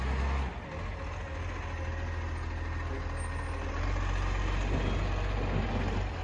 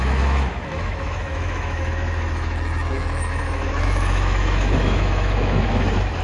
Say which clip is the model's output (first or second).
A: second